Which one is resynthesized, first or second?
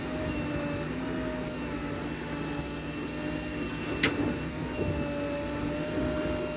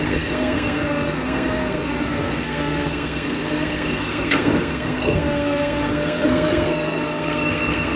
second